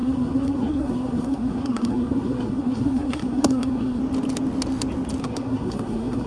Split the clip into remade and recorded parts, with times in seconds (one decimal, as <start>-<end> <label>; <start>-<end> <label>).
0.0-4.0 remade; 4.0-5.2 recorded; 5.2-6.3 remade